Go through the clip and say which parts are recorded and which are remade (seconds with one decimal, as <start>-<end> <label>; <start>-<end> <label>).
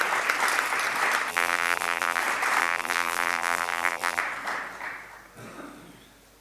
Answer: 0.0-1.3 recorded; 1.3-2.2 remade; 2.2-2.6 recorded; 2.6-4.2 remade; 4.2-6.4 recorded